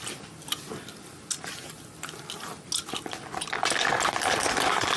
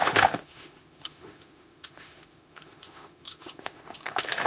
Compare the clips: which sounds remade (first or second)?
second